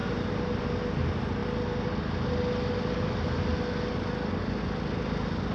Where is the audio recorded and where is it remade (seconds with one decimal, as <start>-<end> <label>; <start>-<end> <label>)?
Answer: 0.0-5.5 recorded